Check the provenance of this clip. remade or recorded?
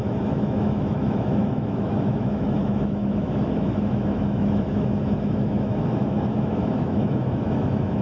remade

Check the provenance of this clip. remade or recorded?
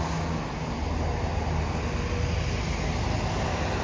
recorded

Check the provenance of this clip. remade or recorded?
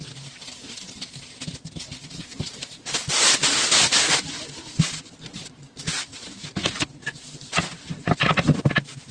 recorded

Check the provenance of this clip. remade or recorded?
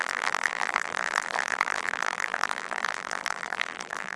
remade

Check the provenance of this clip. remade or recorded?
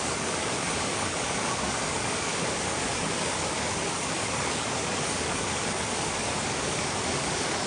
remade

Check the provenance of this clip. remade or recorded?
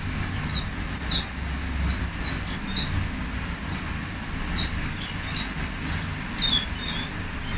recorded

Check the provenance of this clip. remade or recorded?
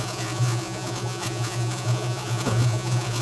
remade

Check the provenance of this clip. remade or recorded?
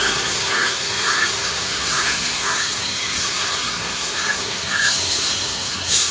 remade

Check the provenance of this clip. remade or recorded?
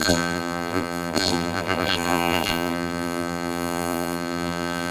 remade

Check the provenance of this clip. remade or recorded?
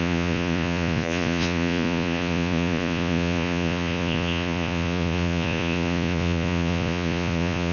remade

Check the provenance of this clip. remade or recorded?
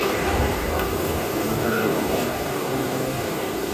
remade